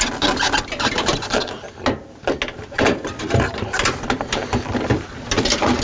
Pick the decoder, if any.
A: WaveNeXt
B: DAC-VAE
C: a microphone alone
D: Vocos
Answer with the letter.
C